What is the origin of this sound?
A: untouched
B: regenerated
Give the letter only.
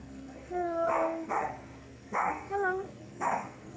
B